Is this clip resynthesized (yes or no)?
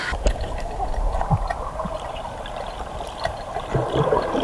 no